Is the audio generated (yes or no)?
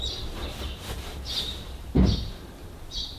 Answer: yes